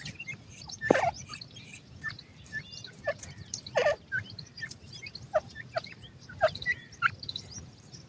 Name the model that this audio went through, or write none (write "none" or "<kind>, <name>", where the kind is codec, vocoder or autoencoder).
vocoder, BigVGAN v2